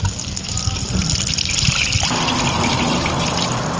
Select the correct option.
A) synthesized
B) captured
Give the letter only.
B